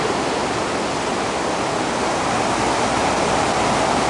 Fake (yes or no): no